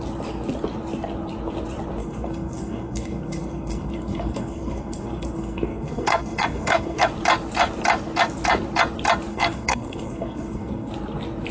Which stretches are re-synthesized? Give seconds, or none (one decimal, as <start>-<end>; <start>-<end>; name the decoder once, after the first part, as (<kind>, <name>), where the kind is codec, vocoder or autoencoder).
2.0-7.1 (codec, SNAC); 9.3-10.9

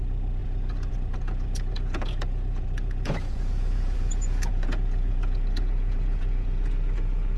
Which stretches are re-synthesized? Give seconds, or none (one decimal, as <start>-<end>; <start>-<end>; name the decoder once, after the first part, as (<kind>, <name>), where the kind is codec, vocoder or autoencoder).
0.0-7.4 (vocoder, Vocos)

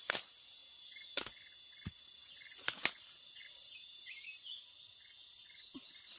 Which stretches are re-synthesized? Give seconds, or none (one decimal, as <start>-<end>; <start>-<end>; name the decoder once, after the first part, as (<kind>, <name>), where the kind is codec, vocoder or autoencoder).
none

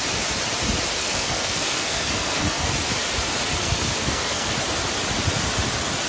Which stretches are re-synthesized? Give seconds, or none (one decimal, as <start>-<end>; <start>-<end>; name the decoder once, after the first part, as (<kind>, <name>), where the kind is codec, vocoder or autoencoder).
1.0-2.7 (codec, SNAC); 3.6-4.5

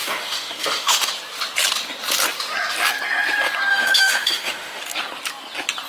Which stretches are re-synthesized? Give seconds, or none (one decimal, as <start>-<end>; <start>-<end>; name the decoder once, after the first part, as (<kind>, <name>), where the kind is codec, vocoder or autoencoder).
0.0-1.1 (autoencoder, DAC-VAE); 3.7-4.8

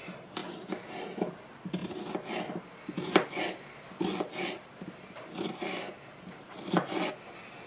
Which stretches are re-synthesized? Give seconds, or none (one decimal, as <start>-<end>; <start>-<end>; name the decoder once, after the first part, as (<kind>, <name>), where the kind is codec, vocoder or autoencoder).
none

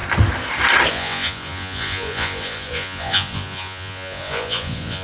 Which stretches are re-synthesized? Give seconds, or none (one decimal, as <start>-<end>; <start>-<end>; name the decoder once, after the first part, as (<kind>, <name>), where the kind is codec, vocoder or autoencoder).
0.9-5.0 (vocoder, Vocos)

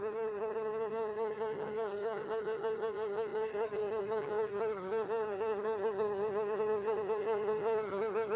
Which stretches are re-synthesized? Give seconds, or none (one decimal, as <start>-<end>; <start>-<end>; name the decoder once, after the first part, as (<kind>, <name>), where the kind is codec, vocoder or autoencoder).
0.0-8.4 (vocoder, HiFi-GAN)